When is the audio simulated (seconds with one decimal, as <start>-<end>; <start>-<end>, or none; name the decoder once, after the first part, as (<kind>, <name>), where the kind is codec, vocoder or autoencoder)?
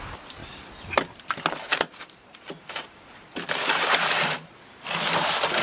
0.0-0.4 (vocoder, BigVGAN v2); 1.0-5.6